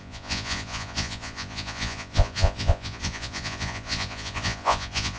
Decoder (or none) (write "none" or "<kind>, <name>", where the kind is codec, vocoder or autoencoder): vocoder, Vocos